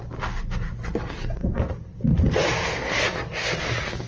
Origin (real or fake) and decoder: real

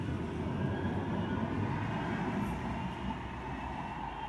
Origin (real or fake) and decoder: real